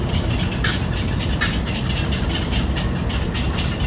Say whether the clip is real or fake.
real